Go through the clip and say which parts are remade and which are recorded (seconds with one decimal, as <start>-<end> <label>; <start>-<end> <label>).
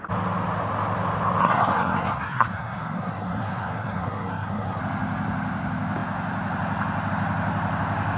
0.0-1.4 recorded; 1.4-4.8 remade; 4.8-8.2 recorded